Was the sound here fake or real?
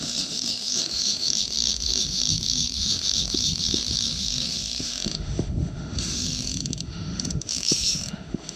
fake